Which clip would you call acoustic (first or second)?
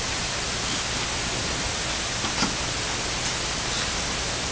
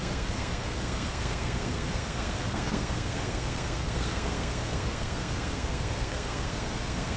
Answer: first